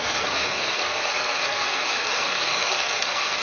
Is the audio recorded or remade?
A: remade